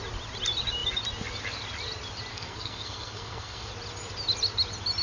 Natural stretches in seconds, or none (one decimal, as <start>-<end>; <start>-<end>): 0.0-2.3; 3.7-5.0